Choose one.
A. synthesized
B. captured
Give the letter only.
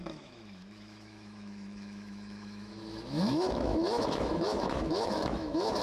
A